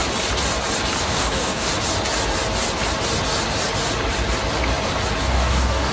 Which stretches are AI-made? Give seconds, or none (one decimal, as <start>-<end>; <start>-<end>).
1.0-1.7; 5.2-5.9